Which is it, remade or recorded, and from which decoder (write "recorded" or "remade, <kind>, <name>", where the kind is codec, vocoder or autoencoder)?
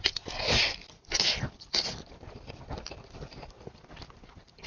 remade, vocoder, BigVGAN v2